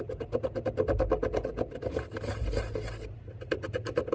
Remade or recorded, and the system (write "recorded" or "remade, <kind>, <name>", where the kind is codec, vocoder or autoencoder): recorded